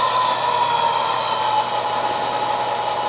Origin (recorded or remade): recorded